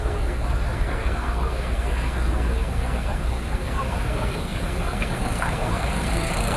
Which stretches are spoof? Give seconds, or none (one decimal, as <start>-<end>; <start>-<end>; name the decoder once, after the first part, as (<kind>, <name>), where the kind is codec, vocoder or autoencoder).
0.0-6.6 (codec, SNAC)